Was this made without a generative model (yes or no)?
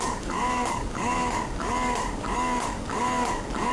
no